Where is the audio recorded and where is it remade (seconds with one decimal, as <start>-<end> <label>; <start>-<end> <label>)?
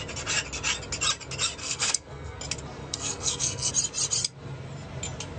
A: 0.0-1.6 recorded; 1.6-2.4 remade; 2.4-2.8 recorded; 2.8-3.7 remade; 3.7-5.4 recorded